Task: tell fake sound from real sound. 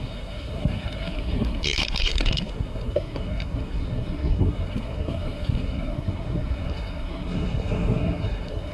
fake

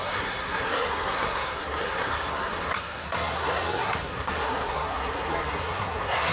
fake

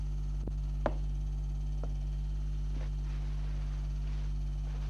real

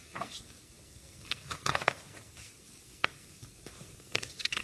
fake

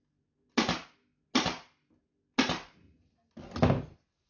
real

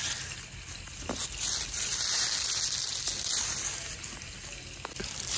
real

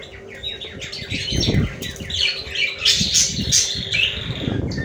real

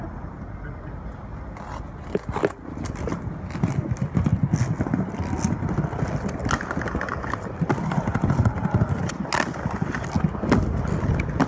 real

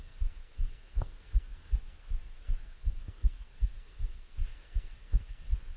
fake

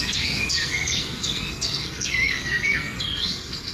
fake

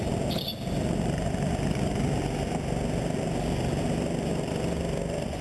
real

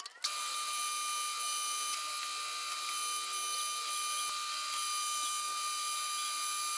real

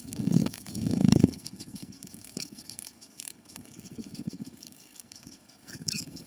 fake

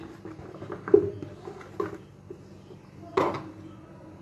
real